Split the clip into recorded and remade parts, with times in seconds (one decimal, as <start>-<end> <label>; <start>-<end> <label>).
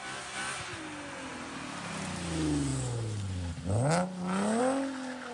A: 0.0-5.3 recorded